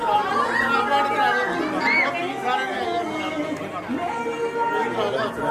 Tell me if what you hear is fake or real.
real